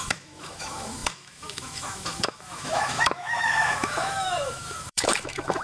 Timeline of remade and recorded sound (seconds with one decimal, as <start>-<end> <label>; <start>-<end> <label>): 0.0-5.6 remade